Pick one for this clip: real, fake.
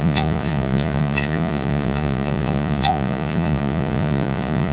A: fake